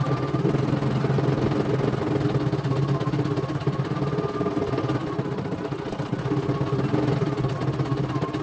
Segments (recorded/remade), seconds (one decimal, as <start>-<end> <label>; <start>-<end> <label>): 0.0-8.4 recorded